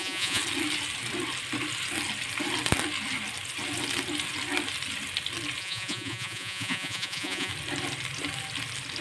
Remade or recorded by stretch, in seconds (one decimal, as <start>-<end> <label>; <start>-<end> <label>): 0.0-0.4 remade; 0.4-5.6 recorded; 5.6-7.5 remade; 7.5-9.0 recorded